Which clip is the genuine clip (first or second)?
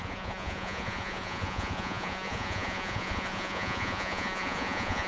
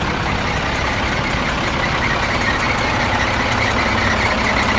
second